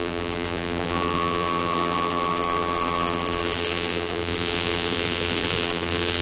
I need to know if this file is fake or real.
fake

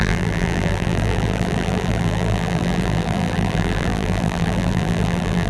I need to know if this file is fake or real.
fake